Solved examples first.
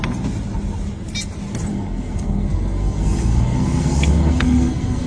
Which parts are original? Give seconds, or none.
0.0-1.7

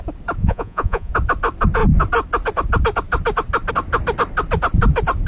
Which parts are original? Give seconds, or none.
0.0-0.4; 1.1-5.3